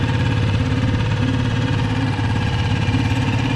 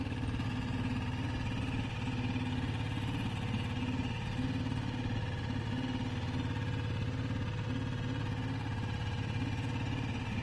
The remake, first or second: first